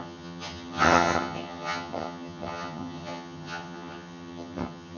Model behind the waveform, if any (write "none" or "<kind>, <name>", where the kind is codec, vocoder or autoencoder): vocoder, HiFi-GAN